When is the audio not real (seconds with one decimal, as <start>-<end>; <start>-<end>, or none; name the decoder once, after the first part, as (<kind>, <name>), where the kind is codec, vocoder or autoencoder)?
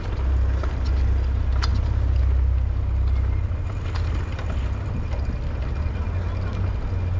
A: none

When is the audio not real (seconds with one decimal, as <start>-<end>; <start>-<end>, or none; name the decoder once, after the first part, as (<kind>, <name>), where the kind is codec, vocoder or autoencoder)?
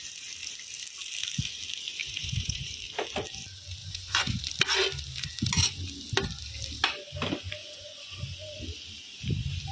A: 2.0-2.7 (vocoder, Vocos); 3.8-4.4; 7.6-8.2